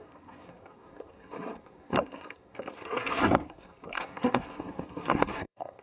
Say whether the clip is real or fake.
fake